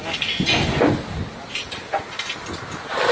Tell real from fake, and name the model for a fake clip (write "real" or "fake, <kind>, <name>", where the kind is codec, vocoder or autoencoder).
real